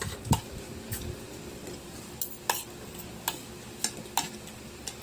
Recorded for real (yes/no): yes